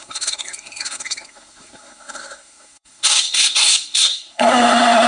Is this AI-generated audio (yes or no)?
yes